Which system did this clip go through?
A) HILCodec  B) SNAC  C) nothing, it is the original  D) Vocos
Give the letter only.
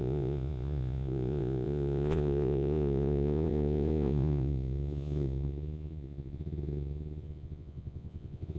D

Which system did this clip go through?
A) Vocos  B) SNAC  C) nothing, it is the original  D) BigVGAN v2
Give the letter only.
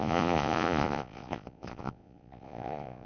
A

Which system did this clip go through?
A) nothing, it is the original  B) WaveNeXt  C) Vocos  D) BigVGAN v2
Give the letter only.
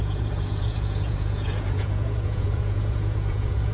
C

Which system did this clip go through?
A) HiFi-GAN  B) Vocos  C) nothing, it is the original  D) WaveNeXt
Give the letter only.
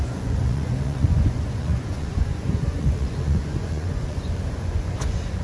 B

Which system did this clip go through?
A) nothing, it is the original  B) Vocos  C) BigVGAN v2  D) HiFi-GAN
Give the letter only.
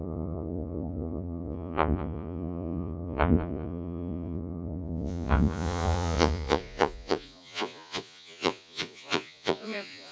B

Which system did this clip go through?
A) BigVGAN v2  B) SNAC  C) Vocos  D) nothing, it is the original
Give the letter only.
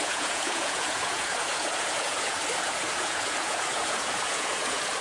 C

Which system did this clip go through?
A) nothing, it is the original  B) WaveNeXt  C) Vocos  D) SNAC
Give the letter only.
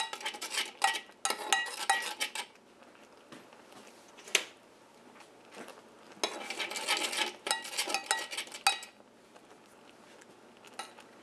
A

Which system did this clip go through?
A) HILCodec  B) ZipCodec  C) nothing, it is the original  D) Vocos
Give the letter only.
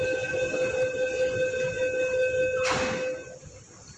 C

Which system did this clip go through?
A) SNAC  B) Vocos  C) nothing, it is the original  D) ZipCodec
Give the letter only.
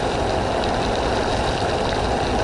C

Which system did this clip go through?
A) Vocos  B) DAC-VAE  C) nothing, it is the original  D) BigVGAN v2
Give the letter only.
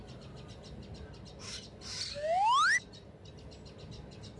C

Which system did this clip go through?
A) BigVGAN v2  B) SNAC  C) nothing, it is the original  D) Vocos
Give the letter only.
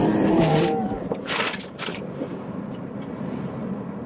C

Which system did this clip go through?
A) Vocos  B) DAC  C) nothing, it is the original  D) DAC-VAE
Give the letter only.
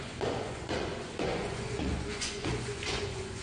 A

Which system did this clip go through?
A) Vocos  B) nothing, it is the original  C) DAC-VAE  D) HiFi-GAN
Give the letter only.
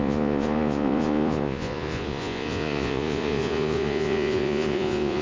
A